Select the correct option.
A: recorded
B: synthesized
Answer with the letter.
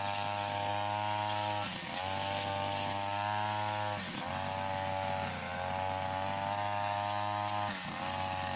A